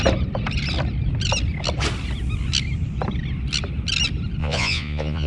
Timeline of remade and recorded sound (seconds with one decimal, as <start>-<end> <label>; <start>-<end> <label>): 0.0-4.4 recorded; 4.4-5.3 remade